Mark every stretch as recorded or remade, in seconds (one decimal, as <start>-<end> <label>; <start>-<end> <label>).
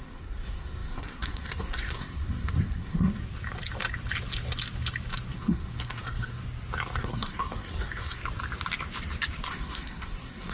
0.0-3.2 remade; 3.2-5.3 recorded; 5.3-6.4 remade; 6.4-7.0 recorded; 7.0-8.2 remade; 8.2-9.5 recorded; 9.5-10.5 remade